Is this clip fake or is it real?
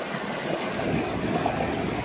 real